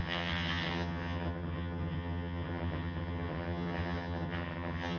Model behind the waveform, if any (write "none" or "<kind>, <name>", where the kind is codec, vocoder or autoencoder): vocoder, HiFi-GAN